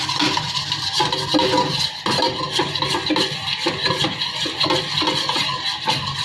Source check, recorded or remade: recorded